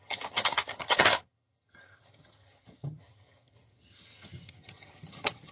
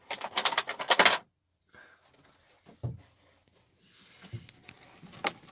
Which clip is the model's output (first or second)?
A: first